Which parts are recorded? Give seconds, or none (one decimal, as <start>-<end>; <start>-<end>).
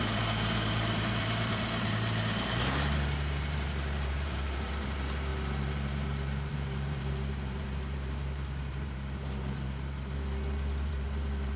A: none